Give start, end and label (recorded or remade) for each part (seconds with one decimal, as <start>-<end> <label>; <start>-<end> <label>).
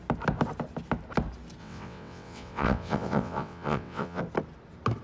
0.0-1.6 recorded; 1.6-4.2 remade; 4.2-5.0 recorded